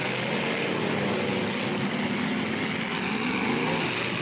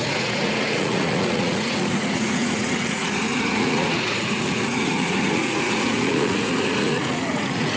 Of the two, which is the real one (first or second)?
first